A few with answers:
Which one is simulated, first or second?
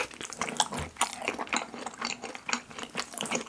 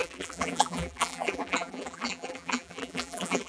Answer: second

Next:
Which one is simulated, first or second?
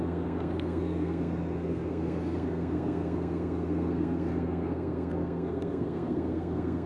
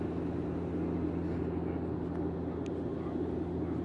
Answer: first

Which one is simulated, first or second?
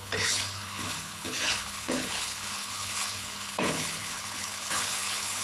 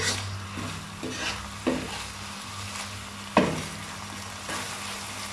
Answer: first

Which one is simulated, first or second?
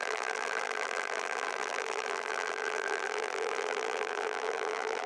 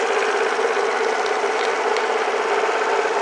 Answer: first